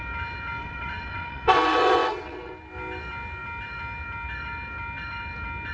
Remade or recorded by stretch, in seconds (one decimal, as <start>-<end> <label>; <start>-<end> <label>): 0.0-0.6 recorded; 0.6-2.5 remade; 2.5-5.7 recorded